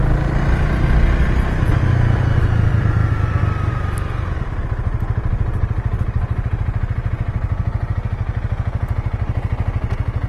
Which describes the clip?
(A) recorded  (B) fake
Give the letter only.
A